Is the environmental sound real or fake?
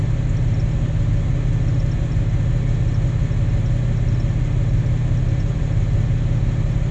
real